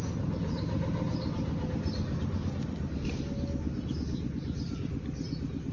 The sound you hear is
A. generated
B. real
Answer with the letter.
B